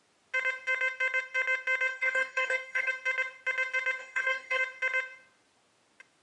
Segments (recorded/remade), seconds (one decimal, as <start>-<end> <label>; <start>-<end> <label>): 0.0-1.9 recorded; 1.9-2.9 remade; 2.9-4.0 recorded; 4.0-4.6 remade; 4.6-6.2 recorded